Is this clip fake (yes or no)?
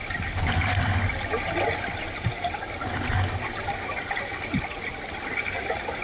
no